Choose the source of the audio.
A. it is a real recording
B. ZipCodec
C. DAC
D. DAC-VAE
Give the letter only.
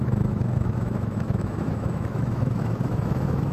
D